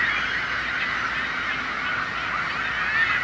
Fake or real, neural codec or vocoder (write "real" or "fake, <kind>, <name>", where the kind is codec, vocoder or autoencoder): real